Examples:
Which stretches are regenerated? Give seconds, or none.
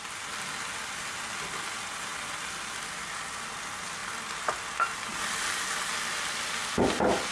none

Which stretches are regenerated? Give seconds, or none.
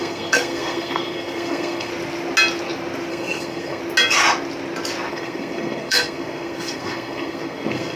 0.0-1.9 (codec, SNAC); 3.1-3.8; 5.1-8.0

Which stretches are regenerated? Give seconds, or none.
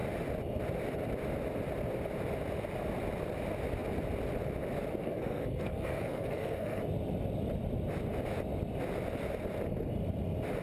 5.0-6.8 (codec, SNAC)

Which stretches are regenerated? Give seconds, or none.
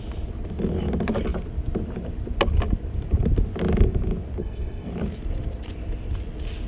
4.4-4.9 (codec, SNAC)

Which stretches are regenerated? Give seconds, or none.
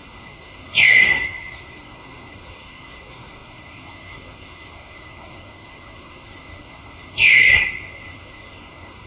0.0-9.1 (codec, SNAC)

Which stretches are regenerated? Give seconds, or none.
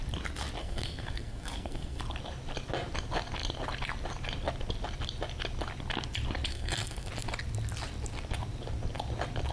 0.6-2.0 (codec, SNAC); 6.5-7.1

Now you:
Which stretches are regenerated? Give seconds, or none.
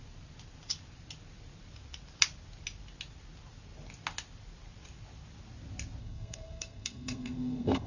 6.0-7.9 (codec, SNAC)